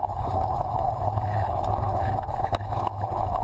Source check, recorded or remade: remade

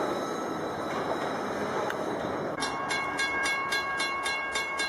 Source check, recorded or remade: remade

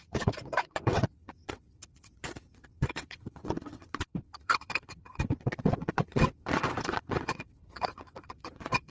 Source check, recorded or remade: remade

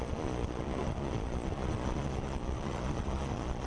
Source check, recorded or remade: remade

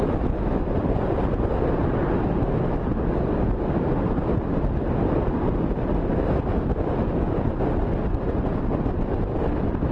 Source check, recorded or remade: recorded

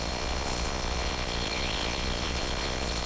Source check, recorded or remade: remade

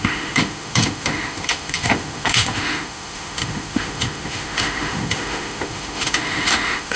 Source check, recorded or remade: remade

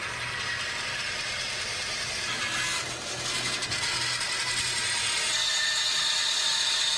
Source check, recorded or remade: recorded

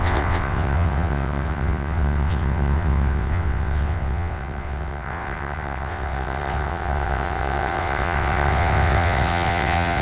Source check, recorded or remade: remade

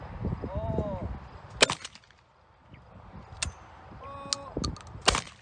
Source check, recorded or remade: recorded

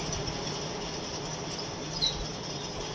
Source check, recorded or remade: recorded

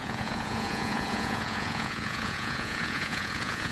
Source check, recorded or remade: remade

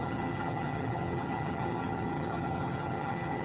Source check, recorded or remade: remade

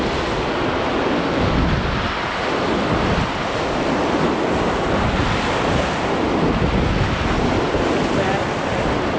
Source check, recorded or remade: recorded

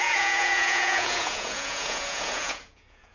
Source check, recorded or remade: remade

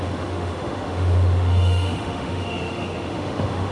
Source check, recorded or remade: remade